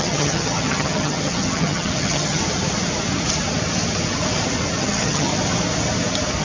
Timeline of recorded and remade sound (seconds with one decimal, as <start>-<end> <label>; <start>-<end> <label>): 0.0-2.4 remade; 2.4-4.8 recorded; 4.8-5.3 remade; 5.3-6.4 recorded